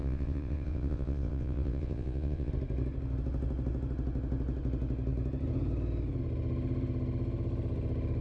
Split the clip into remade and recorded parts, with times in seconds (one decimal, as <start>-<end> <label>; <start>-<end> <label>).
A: 0.0-2.5 remade; 2.5-8.2 recorded